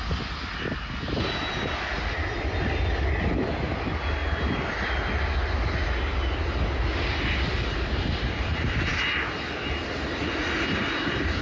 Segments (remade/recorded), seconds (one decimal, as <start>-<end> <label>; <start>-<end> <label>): 0.0-11.4 recorded